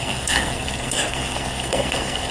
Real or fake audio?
fake